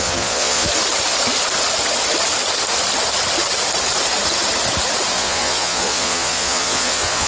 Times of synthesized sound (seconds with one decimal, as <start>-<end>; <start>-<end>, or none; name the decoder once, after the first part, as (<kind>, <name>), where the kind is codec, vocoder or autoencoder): 0.0-0.7 (vocoder, Vocos); 5.1-7.3